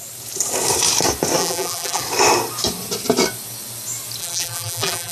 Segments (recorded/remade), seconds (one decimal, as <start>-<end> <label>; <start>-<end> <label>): 0.0-1.4 recorded; 1.4-2.0 remade; 2.0-4.2 recorded; 4.2-5.1 remade